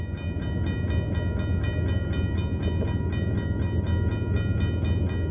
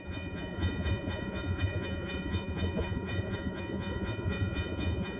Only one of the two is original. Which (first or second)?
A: first